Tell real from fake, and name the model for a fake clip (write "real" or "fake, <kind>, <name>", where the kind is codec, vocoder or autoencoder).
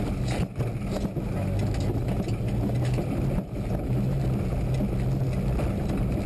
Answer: real